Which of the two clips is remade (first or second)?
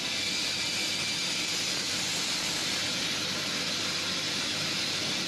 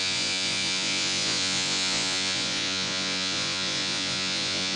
second